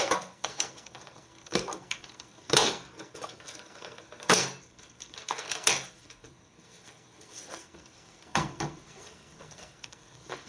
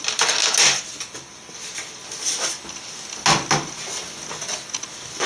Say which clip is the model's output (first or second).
first